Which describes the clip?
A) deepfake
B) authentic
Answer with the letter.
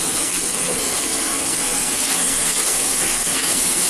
A